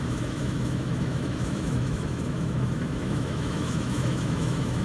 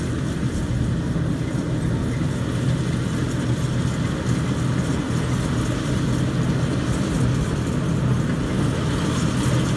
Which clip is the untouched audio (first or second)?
second